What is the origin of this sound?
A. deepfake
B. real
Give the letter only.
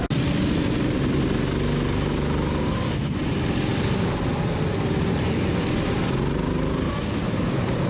B